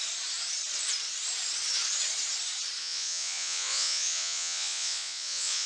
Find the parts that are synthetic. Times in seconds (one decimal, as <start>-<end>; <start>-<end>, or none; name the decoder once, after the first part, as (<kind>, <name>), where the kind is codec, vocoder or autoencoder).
2.8-5.7 (vocoder, Vocos)